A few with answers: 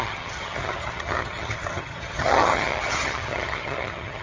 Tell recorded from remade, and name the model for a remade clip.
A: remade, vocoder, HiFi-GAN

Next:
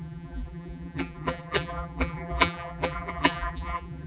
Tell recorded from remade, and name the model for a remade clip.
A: remade, vocoder, BigVGAN v2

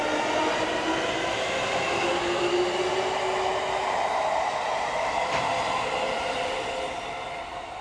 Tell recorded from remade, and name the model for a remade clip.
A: recorded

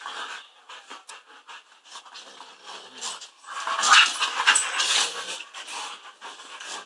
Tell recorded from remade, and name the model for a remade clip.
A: recorded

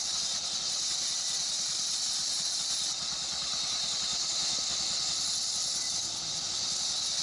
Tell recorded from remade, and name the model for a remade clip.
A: recorded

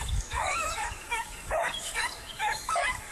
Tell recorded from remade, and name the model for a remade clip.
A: remade, codec, DAC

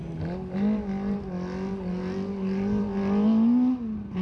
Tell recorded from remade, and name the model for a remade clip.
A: recorded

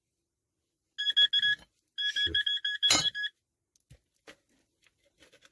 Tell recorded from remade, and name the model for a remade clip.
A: recorded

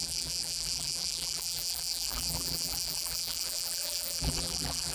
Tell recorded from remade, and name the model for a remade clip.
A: remade, vocoder, BigVGAN v2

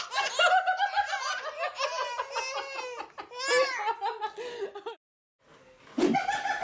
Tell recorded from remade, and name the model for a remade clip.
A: recorded